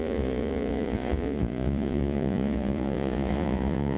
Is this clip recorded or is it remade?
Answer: remade